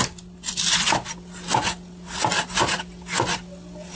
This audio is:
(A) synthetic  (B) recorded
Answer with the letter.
B